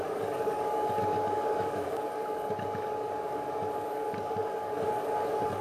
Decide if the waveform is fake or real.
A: fake